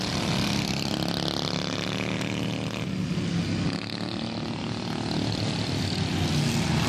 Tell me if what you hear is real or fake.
real